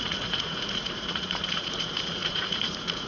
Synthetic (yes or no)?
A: yes